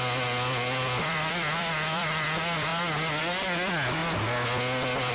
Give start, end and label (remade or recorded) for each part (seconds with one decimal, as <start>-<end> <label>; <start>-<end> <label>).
0.0-2.7 remade; 2.7-3.2 recorded; 3.2-4.0 remade; 4.0-5.1 recorded